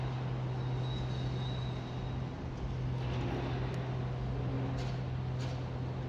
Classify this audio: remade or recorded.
recorded